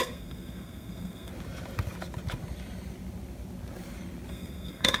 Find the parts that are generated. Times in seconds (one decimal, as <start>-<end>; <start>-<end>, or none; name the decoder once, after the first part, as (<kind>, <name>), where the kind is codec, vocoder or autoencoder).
0.0-1.3 (codec, SNAC); 4.3-5.0